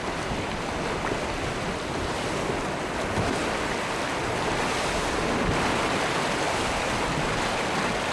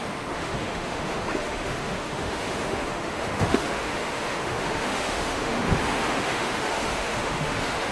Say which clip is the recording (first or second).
first